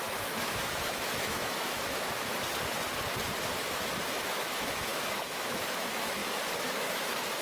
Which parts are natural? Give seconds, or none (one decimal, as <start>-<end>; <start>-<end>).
2.3-3.6; 6.2-6.7